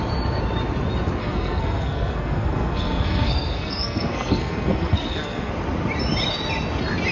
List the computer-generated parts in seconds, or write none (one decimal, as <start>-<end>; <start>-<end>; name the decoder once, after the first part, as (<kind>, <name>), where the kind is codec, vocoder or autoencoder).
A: 1.2-5.5 (codec, SNAC)